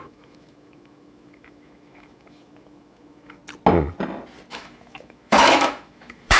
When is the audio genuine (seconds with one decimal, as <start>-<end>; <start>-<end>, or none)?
3.4-4.5